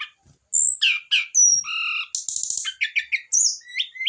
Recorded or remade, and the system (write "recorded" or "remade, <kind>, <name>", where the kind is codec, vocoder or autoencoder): recorded